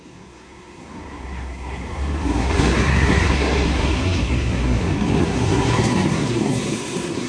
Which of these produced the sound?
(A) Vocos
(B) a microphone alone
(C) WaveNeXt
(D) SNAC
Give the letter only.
D